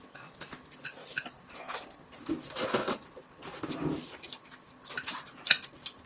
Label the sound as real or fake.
fake